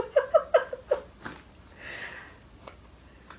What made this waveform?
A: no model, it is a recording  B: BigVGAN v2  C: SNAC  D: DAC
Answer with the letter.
A